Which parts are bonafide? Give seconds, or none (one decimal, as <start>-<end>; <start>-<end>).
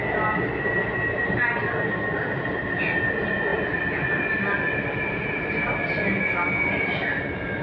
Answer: 0.0-7.6